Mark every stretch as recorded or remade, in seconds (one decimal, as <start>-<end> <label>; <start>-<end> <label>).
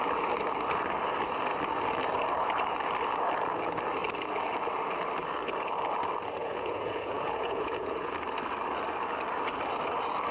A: 0.0-6.4 recorded; 6.4-8.1 remade; 8.1-10.3 recorded